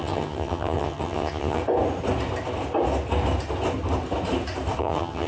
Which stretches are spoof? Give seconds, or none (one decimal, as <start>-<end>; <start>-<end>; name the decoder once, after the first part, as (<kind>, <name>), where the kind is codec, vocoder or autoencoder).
0.0-1.6 (vocoder, HiFi-GAN); 4.8-5.3